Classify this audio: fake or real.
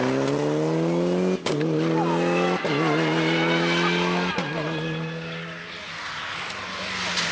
real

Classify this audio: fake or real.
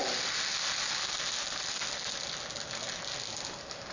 real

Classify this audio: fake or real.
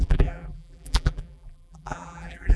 fake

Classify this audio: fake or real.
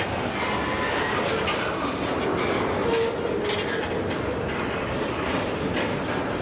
real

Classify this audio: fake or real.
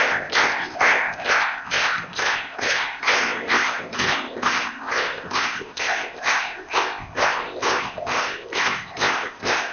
fake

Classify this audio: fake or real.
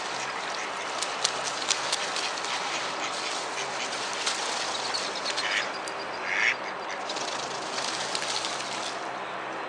real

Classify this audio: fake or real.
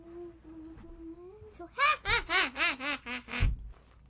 real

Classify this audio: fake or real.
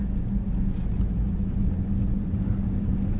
real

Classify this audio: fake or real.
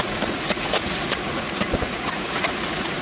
fake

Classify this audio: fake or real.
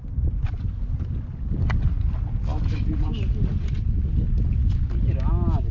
real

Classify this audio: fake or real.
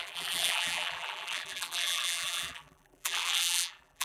fake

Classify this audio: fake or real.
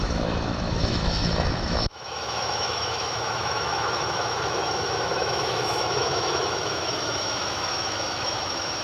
fake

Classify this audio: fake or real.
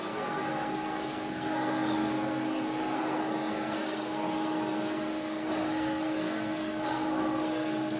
fake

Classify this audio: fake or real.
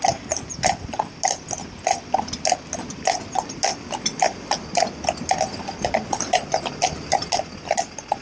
real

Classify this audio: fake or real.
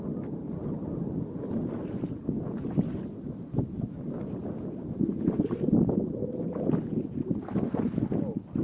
real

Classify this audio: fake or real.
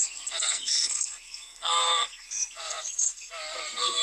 fake